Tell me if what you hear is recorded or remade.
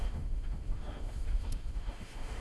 remade